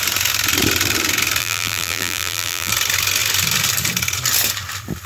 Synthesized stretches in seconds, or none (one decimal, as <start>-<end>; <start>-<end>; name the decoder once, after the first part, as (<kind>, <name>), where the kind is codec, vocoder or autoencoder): 1.4-2.7 (vocoder, BigVGAN v2)